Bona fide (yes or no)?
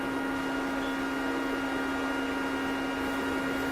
yes